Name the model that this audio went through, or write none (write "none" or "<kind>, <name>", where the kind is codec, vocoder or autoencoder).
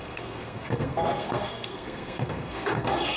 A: codec, SNAC